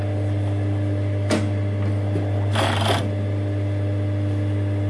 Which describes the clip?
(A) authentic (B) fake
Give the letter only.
A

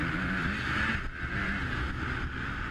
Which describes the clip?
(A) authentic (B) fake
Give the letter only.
A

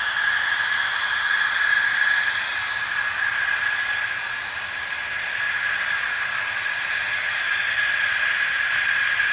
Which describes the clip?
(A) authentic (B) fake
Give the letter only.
A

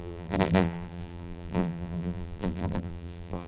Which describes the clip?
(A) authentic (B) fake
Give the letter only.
B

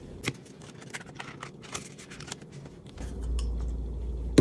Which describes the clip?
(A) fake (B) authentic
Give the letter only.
B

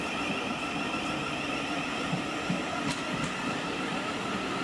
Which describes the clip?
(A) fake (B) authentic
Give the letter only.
A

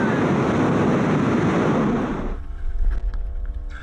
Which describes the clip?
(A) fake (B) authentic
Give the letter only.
B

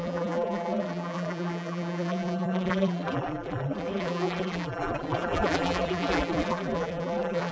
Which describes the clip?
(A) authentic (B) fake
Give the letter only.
B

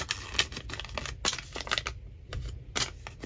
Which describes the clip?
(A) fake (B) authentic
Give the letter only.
B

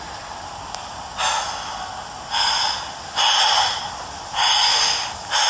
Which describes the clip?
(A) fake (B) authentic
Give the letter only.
B